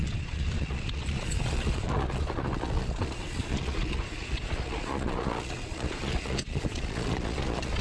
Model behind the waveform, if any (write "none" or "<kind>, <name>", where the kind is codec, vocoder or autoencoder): vocoder, Vocos